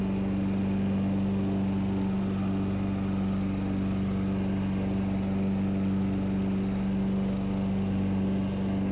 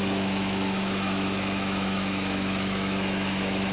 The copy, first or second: second